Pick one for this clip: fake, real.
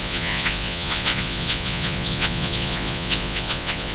fake